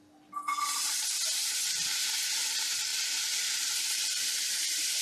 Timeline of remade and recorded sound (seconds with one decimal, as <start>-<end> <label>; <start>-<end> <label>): 0.0-0.5 remade; 0.5-1.6 recorded; 1.6-5.0 remade